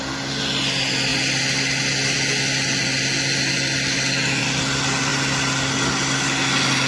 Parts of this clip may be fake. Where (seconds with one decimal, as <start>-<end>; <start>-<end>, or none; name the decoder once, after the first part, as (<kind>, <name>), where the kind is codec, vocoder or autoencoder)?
none